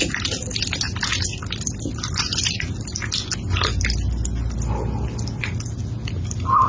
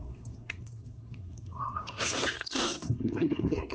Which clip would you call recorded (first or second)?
first